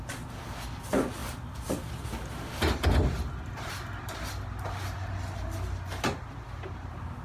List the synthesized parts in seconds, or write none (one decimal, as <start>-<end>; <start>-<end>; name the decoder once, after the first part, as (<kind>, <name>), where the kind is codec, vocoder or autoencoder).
1.2-1.9 (vocoder, BigVGAN v2)